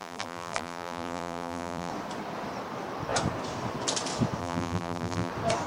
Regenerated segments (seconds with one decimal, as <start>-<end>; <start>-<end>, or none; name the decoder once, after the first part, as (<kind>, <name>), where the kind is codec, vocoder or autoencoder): 0.0-1.9 (vocoder, BigVGAN v2); 4.4-5.3